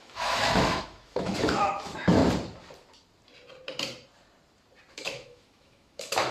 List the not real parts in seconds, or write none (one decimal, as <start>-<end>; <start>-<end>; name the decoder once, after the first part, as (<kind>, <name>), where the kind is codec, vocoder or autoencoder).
0.0-2.2 (autoencoder, DAC-VAE); 4.9-6.3